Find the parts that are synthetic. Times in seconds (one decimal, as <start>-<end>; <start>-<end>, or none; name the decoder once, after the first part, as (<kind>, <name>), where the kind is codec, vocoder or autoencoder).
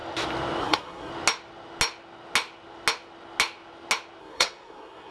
0.6-1.1 (codec, SNAC); 4.2-5.1